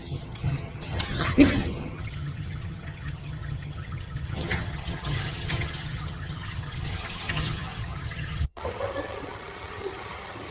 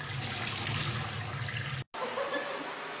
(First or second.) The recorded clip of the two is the second